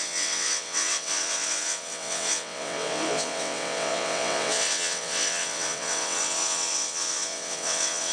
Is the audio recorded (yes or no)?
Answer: no